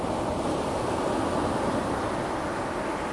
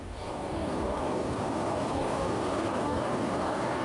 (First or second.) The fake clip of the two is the second